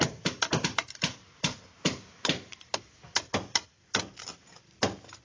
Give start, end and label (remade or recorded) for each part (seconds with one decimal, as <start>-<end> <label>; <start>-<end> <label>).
0.0-5.2 recorded